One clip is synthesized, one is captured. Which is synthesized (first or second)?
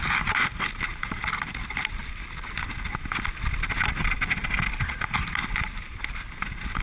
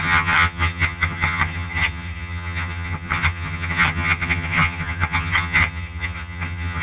second